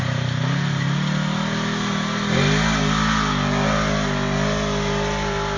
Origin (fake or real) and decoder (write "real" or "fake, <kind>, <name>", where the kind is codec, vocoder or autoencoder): real